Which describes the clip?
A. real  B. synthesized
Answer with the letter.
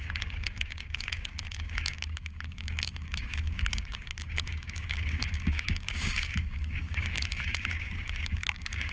B